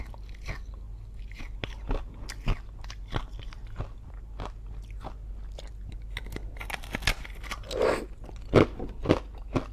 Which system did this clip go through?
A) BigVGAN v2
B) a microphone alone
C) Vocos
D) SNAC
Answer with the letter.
B